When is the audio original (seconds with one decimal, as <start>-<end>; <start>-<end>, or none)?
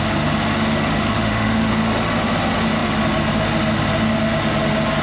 0.0-0.9; 1.7-5.0